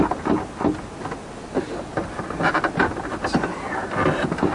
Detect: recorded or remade recorded